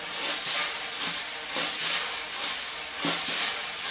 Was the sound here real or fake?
real